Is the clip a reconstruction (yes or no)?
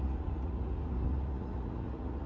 yes